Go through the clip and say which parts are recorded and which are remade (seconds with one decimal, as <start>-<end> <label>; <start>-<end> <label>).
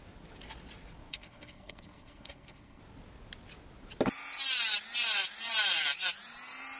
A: 0.0-1.1 recorded; 1.1-2.8 remade; 2.8-6.8 recorded